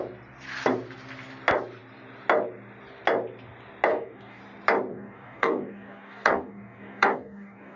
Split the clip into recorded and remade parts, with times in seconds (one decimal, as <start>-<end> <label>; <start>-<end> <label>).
0.0-3.9 recorded; 3.9-4.4 remade; 4.4-4.9 recorded; 4.9-7.8 remade